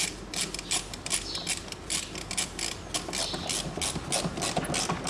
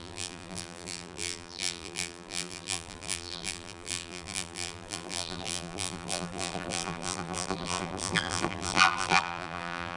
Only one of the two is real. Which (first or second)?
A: first